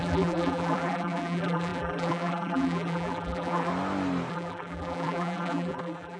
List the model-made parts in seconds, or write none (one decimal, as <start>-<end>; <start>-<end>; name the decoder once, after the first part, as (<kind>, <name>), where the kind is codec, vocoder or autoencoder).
0.0-3.7 (vocoder, BigVGAN v2); 4.3-6.2